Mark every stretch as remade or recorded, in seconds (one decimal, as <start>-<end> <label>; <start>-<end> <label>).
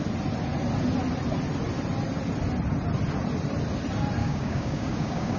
0.0-4.2 recorded; 4.2-5.4 remade